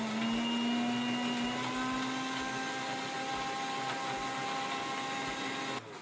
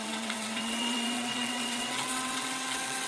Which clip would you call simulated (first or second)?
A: second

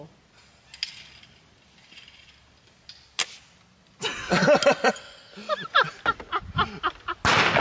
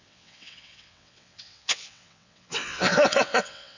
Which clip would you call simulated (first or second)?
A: second